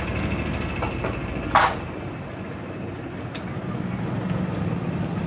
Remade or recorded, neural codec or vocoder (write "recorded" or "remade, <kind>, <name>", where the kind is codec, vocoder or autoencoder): recorded